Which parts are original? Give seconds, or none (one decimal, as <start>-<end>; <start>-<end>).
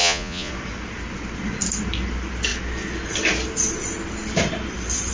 0.5-5.1